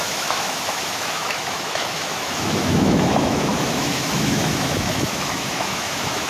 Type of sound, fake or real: fake